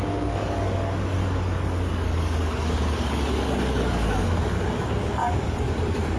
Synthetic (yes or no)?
yes